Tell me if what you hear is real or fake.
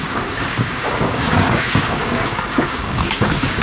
fake